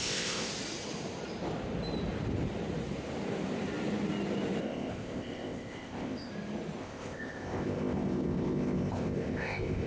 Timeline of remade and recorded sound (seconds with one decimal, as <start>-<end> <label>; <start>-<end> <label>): 0.0-0.5 remade; 0.5-4.6 recorded; 4.6-6.3 remade; 6.3-6.8 recorded; 6.8-9.9 remade